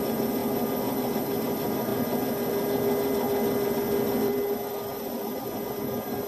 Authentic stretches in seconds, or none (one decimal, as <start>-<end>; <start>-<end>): 0.0-6.3